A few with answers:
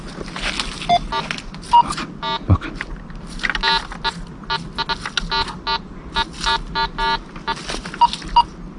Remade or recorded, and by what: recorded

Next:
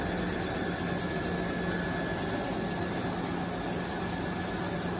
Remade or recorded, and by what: recorded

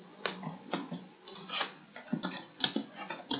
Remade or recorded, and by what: remade, vocoder, Vocos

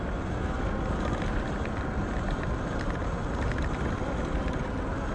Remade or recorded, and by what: recorded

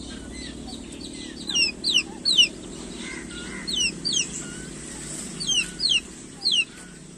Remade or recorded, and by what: recorded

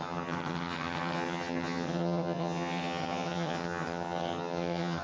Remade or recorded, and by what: remade, vocoder, HiFi-GAN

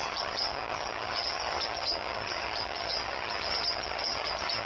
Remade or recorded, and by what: remade, vocoder, HiFi-GAN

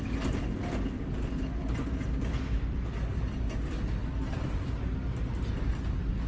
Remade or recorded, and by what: recorded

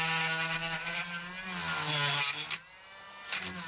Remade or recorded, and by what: recorded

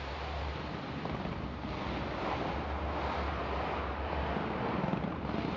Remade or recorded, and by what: recorded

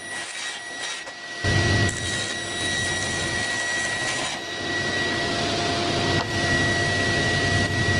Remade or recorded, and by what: recorded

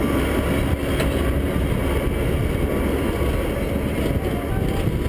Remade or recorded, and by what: recorded